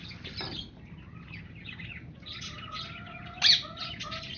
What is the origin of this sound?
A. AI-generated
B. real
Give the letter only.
B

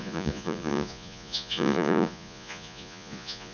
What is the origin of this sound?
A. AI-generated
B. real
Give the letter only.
A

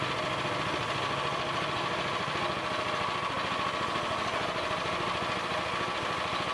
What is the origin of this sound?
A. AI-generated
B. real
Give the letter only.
B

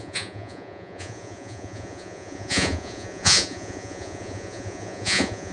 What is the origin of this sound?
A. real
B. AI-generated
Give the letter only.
B